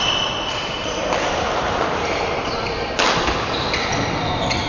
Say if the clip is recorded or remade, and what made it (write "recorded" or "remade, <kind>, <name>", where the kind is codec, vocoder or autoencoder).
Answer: recorded